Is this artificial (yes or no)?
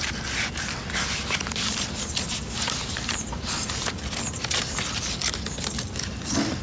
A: no